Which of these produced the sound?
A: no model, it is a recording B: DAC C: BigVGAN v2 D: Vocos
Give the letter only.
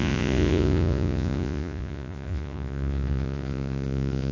D